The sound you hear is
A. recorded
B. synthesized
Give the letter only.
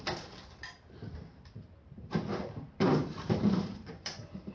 B